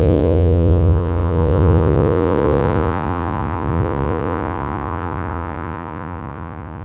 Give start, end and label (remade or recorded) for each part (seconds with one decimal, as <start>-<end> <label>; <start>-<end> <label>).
0.0-6.8 remade